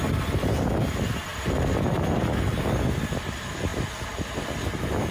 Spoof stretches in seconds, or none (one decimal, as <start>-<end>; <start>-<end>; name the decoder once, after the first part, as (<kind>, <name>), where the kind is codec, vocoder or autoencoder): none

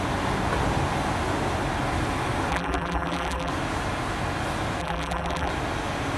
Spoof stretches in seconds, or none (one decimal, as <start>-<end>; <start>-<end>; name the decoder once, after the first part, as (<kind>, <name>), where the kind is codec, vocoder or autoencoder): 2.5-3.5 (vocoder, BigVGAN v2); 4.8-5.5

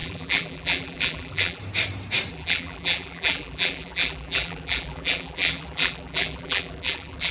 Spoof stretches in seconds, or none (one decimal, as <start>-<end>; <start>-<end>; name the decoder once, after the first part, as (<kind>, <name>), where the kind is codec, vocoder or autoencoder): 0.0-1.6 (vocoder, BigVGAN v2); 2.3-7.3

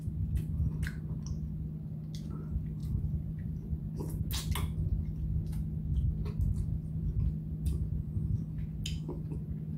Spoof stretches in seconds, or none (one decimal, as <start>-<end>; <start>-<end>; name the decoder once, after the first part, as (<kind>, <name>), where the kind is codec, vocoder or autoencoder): 2.8-3.8 (vocoder, BigVGAN v2)